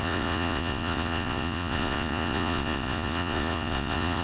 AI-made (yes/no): yes